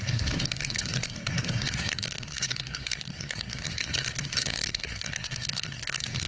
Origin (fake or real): fake